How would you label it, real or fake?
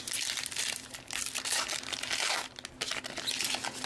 real